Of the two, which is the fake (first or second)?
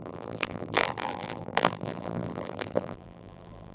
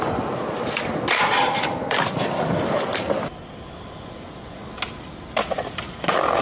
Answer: first